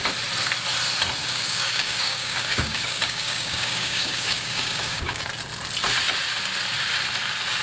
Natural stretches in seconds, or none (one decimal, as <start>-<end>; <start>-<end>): 0.0-1.2; 5.2-7.6